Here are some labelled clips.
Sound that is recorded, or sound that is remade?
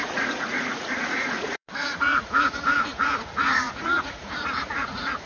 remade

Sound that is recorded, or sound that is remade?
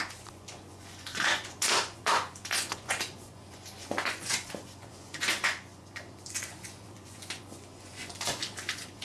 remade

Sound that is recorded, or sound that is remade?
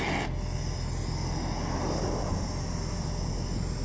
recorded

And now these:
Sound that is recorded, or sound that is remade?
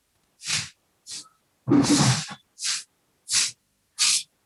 recorded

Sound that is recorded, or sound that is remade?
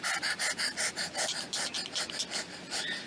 recorded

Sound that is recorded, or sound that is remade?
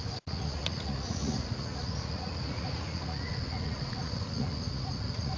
remade